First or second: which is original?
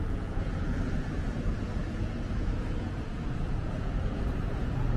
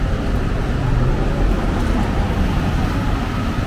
second